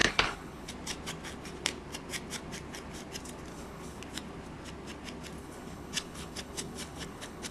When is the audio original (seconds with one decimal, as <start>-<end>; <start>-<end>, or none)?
0.7-3.5; 4.0-5.4

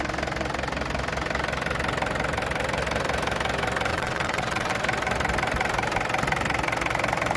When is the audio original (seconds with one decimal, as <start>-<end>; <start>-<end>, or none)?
0.0-3.9; 4.7-7.4